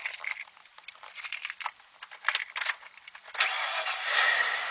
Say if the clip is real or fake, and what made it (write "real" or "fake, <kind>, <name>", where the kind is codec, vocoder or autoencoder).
real